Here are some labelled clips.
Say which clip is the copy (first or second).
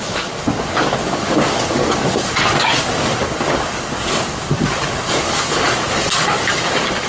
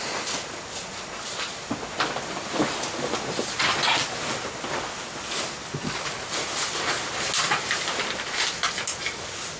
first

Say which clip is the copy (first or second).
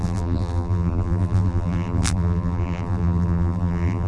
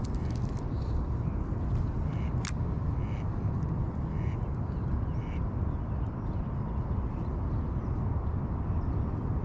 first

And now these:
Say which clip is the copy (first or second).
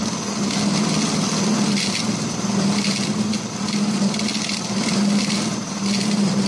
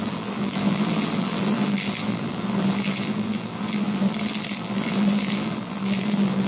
second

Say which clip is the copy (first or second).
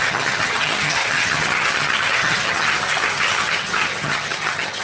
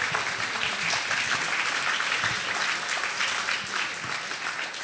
first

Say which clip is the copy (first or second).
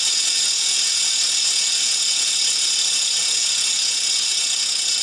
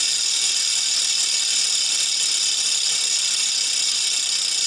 first